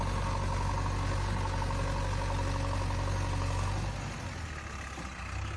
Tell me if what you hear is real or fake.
real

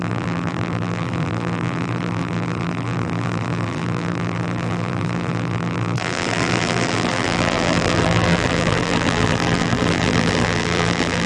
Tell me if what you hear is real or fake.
fake